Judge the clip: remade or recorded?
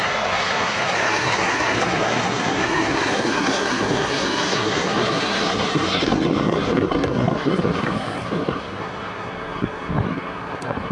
remade